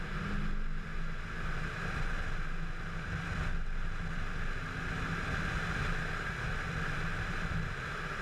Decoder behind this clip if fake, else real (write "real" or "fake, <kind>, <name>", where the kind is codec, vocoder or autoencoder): real